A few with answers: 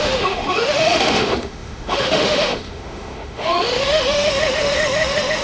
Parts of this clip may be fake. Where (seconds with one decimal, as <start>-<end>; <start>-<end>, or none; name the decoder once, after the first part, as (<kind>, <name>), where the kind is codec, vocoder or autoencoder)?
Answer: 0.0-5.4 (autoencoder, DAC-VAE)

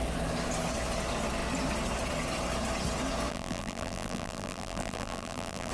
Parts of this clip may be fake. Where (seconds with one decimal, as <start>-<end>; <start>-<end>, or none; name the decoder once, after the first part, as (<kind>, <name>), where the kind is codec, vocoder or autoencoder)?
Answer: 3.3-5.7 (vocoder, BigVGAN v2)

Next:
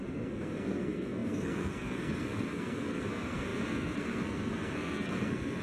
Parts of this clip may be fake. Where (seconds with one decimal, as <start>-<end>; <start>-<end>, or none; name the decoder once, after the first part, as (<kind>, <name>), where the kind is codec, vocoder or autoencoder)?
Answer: 0.0-5.6 (codec, SNAC)